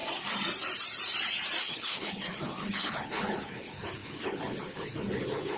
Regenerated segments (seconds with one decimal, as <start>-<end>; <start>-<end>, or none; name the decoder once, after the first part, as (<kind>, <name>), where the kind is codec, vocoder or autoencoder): 1.6-5.6 (codec, HILCodec)